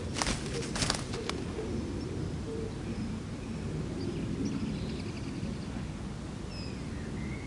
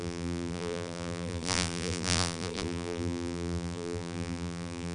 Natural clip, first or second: first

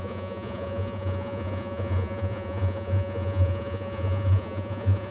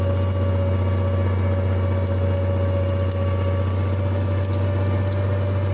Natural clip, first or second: second